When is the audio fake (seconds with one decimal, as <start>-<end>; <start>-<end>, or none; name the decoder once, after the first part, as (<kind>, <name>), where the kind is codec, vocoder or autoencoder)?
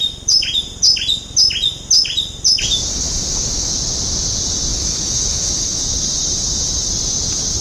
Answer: 2.9-3.7 (autoencoder, DAC-VAE); 4.7-5.8